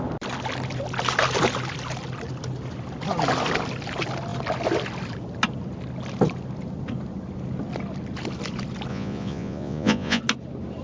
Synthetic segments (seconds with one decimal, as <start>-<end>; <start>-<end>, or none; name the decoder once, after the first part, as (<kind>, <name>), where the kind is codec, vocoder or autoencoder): 8.9-10.2 (vocoder, Vocos)